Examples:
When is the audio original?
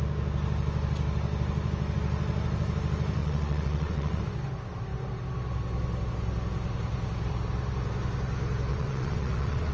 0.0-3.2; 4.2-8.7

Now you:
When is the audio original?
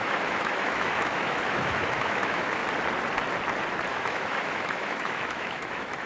2.6-3.9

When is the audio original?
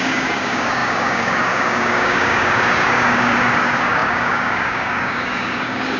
none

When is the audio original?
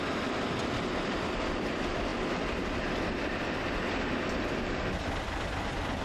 0.0-6.0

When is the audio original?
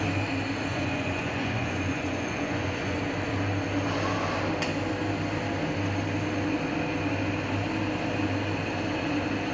0.0-0.7; 3.0-9.5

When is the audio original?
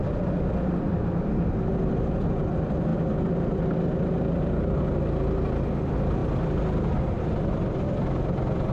0.0-8.7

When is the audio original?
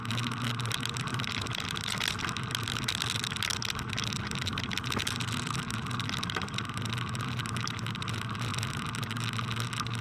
0.0-1.1; 2.0-10.0